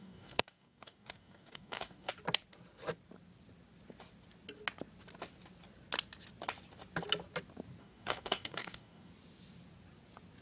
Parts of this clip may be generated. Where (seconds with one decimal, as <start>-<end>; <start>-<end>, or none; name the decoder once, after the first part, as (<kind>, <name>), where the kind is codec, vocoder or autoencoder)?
0.0-2.1 (codec, DAC); 7.8-9.1